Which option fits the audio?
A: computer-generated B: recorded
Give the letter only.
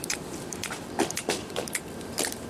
A